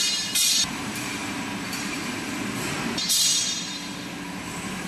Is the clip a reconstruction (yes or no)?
yes